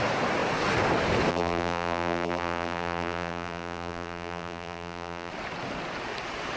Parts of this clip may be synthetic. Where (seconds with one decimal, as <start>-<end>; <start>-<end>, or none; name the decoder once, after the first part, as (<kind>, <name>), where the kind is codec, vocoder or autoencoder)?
1.3-5.3 (vocoder, BigVGAN v2)